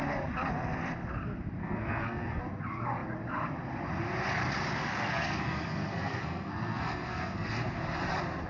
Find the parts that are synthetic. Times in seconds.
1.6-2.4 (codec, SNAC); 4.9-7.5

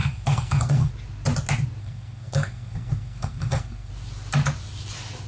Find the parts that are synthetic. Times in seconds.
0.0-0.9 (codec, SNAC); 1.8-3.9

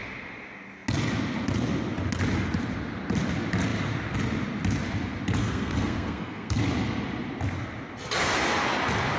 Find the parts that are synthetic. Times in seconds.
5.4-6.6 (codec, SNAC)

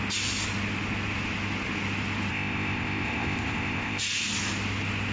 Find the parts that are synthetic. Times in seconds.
2.3-4.0 (codec, ZipCodec)

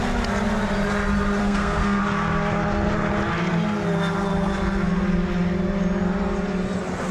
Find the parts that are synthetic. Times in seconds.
1.4-2.0 (codec, SNAC)